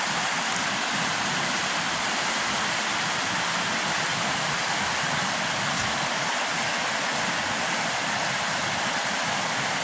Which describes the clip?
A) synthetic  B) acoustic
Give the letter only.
B